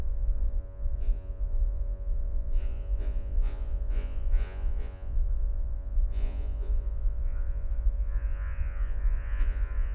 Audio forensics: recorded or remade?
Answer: remade